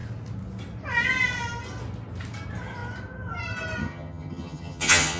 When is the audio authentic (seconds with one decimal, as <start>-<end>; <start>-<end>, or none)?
0.0-3.8